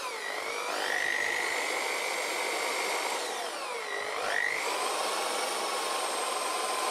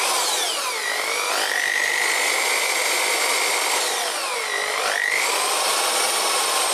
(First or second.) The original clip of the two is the first